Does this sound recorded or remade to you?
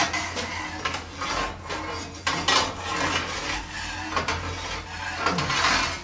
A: recorded